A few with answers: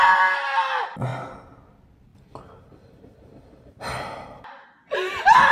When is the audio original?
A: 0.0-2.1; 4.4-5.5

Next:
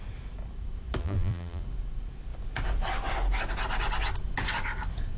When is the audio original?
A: 0.0-1.0; 1.6-5.2

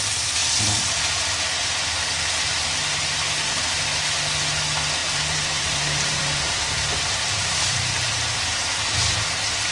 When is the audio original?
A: 0.0-5.0; 8.1-9.7

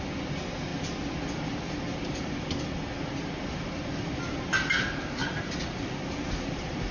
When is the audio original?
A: 0.0-5.2; 5.9-6.9